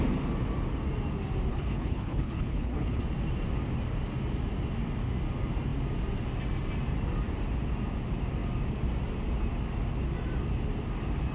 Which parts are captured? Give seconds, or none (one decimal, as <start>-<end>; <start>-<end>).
0.0-1.5; 3.0-11.3